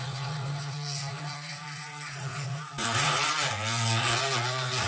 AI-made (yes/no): yes